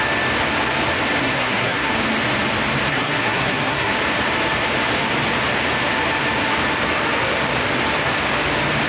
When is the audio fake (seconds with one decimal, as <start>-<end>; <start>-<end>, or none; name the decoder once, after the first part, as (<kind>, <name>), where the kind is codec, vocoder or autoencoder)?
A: 1.2-1.9 (codec, SNAC); 2.9-3.9